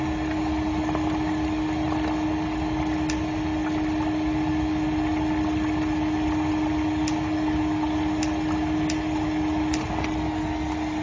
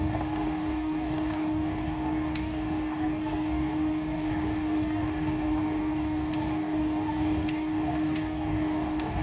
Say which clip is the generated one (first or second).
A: second